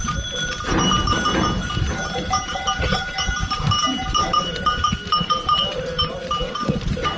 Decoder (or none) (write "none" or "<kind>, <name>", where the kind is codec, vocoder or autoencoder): vocoder, BigVGAN v2